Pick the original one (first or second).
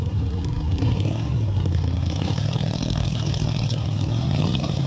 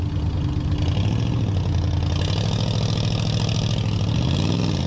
second